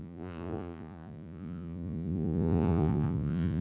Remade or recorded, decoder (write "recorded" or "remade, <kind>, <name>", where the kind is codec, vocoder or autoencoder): remade, vocoder, Vocos